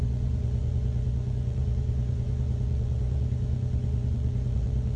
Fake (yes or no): yes